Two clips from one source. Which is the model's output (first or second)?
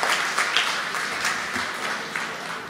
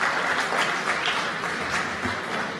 second